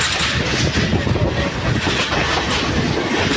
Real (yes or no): yes